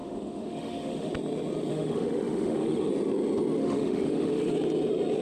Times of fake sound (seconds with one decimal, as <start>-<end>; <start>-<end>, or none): 0.0-1.1; 1.7-2.9; 3.6-4.5